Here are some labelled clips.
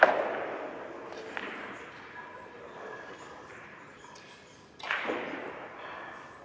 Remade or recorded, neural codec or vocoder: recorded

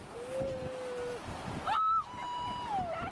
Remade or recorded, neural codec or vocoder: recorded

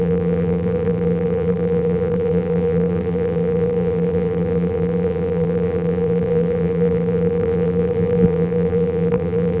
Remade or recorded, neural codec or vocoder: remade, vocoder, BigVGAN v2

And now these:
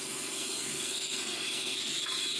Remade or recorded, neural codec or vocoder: remade, codec, SNAC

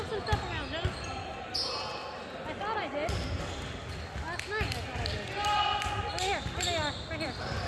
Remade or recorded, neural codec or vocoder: recorded